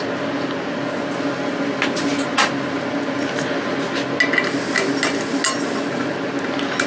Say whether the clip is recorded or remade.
recorded